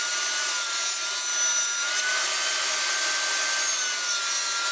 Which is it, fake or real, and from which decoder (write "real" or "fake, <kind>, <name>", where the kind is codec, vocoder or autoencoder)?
real